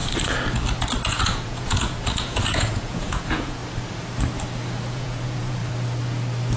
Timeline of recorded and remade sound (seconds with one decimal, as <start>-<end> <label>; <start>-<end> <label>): 0.0-1.1 recorded; 1.1-3.6 remade; 3.6-4.9 recorded; 4.9-5.6 remade; 5.6-6.6 recorded